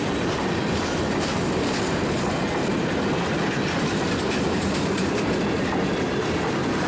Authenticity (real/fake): fake